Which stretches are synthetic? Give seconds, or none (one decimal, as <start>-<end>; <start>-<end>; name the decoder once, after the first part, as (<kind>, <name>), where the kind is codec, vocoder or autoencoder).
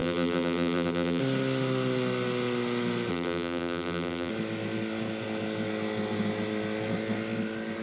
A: 0.0-1.2 (vocoder, BigVGAN v2); 3.1-4.3